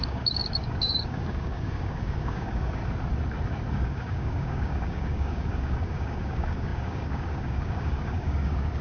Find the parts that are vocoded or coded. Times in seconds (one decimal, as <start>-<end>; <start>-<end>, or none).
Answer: 0.0-2.8; 3.7-8.8